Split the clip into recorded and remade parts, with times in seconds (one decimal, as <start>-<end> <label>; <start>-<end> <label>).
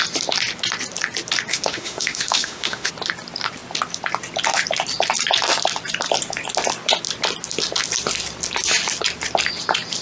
0.0-1.5 recorded; 1.5-2.9 remade; 2.9-10.0 recorded